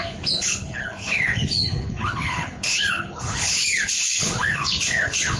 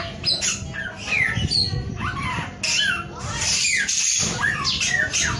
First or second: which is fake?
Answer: first